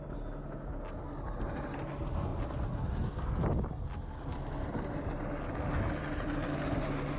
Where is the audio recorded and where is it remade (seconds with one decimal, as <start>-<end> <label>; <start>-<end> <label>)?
0.0-7.2 recorded